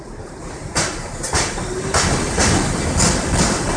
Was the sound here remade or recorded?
recorded